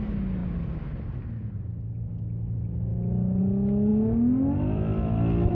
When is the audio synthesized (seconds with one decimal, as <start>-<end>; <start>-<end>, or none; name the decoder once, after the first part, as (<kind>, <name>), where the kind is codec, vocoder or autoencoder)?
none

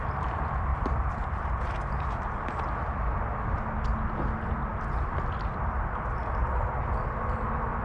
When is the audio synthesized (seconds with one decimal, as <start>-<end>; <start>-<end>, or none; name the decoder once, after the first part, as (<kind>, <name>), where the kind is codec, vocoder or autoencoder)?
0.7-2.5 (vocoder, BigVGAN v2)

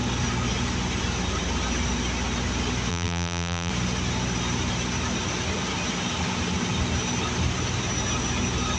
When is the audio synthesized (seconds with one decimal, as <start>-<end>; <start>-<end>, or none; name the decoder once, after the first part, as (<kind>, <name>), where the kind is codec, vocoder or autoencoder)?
2.9-3.7 (vocoder, BigVGAN v2)

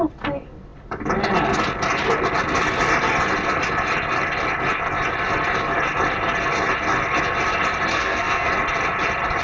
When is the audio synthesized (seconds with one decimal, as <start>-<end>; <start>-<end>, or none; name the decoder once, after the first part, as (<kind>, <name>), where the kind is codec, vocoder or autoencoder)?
7.9-8.5 (codec, SNAC)

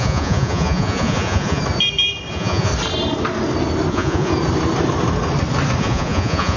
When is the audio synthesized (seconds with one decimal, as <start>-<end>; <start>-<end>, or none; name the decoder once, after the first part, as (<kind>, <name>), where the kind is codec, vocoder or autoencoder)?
0.0-1.6 (vocoder, Vocos); 2.3-2.7; 3.9-4.3; 5.8-6.6